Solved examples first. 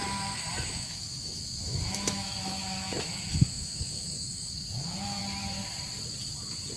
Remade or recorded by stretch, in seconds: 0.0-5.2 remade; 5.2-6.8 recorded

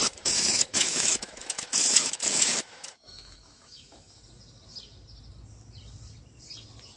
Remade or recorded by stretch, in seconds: 0.0-4.2 remade; 4.2-7.0 recorded

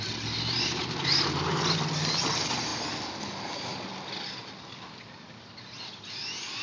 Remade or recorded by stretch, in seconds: 0.0-6.6 recorded

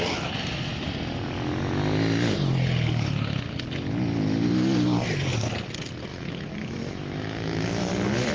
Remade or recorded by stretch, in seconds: 0.0-6.1 recorded; 6.1-7.9 remade; 7.9-8.3 recorded

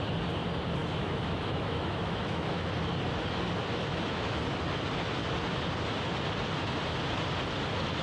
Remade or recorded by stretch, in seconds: 0.0-0.8 recorded; 0.8-2.9 remade; 2.9-3.7 recorded; 3.7-4.4 remade; 4.4-8.0 recorded